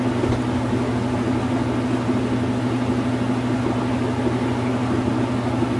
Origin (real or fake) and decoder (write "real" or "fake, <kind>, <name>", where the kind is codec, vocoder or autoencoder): real